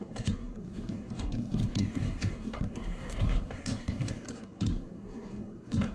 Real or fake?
fake